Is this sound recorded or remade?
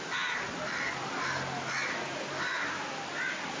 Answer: recorded